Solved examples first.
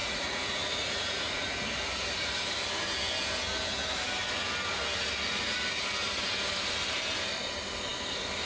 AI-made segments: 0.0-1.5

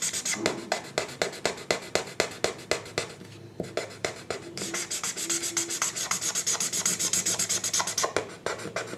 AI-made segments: 4.0-5.1; 6.9-7.4

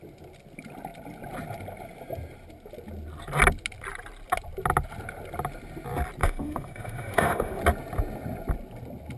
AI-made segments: 6.2-7.6